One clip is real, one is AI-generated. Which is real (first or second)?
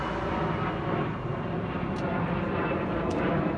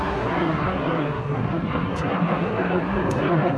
first